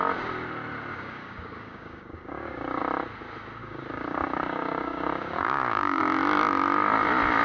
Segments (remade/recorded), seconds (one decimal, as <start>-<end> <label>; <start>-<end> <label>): 0.0-0.9 recorded; 0.9-2.8 remade; 2.8-3.6 recorded; 3.6-6.0 remade; 6.0-7.4 recorded